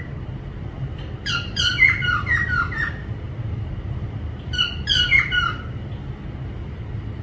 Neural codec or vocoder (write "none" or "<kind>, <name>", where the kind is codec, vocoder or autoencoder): vocoder, BigVGAN v2